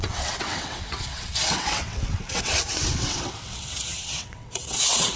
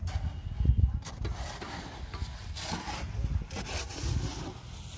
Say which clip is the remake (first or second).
first